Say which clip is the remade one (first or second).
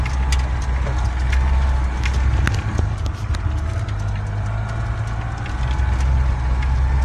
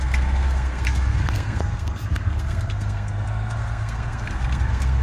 second